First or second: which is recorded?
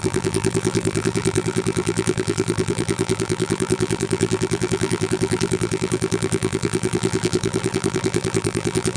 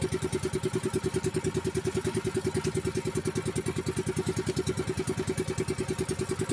second